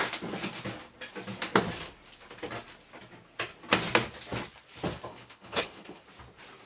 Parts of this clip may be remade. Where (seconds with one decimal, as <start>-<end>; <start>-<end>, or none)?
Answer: 5.1-6.0